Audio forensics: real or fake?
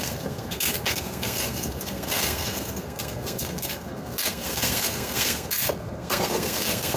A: fake